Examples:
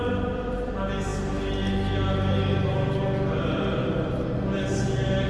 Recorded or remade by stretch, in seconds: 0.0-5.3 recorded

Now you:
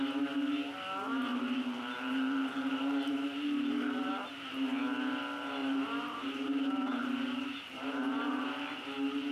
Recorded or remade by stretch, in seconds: 0.0-1.3 recorded; 1.3-4.1 remade; 4.1-5.6 recorded; 5.6-8.0 remade; 8.0-9.3 recorded